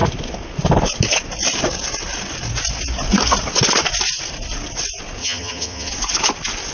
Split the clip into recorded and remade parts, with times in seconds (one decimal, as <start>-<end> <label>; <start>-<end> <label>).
0.0-5.2 recorded; 5.2-5.9 remade; 5.9-6.7 recorded